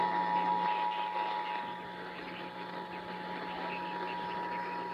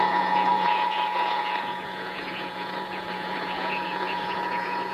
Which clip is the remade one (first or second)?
second